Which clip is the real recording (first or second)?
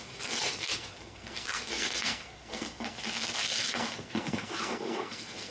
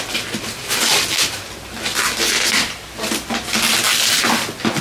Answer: second